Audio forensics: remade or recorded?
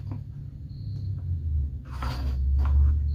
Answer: recorded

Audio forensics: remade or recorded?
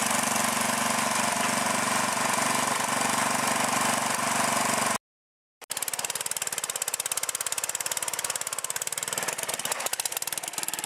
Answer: recorded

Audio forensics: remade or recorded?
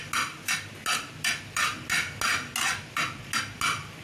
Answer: recorded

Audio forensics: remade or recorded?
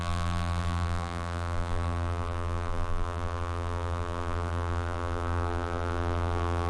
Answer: remade